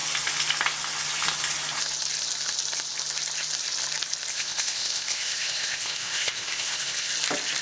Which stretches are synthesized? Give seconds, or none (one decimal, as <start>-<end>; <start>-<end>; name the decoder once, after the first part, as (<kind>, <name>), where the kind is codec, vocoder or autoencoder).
4.3-7.1 (codec, ZipCodec)